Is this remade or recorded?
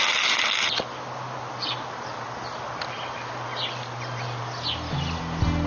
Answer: recorded